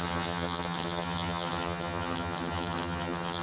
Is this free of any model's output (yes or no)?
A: no